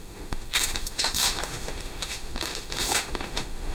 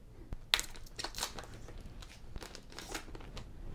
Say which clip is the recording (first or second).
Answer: second